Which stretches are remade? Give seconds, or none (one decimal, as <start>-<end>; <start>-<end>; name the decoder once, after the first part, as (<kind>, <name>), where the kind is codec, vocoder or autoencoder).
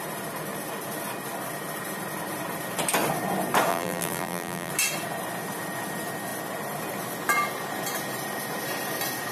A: 3.7-4.7 (vocoder, BigVGAN v2)